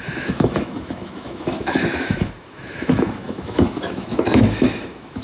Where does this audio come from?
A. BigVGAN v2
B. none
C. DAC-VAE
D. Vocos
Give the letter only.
C